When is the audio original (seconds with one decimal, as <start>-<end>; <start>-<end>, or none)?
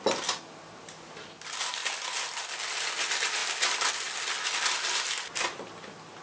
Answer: 0.0-6.2